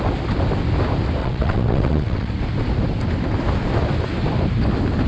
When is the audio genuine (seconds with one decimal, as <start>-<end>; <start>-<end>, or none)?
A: 0.0-1.2; 2.3-5.1